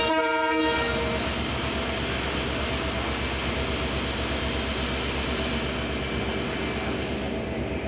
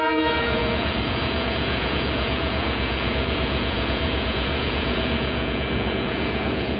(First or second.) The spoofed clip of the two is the second